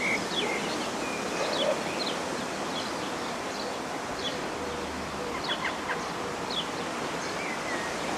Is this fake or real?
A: real